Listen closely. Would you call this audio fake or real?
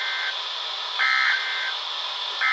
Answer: real